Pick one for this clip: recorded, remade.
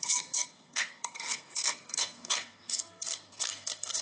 remade